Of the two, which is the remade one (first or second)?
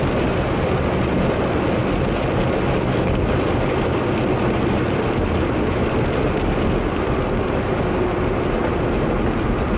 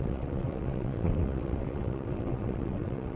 second